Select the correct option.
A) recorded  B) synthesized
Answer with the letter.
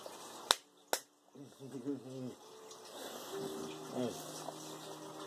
A